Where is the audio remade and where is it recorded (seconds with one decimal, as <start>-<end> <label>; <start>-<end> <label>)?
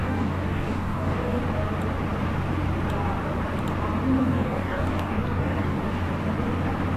0.0-1.4 remade; 1.4-4.2 recorded; 4.2-5.9 remade; 5.9-7.0 recorded